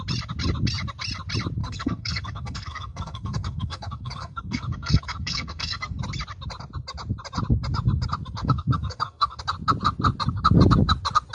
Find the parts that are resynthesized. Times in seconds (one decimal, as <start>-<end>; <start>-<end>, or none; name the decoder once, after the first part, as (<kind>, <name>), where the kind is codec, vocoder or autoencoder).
1.6-6.0 (codec, SNAC); 8.4-9.4